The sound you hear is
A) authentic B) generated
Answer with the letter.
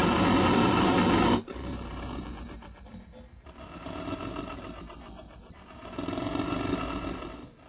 A